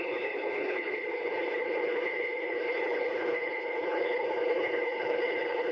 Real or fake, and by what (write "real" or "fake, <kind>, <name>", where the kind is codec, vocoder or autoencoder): fake, codec, HILCodec